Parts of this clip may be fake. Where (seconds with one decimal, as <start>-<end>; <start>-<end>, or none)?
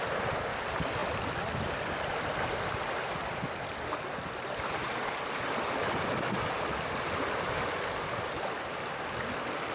none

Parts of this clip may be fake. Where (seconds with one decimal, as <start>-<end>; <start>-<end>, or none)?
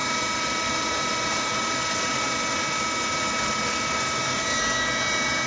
none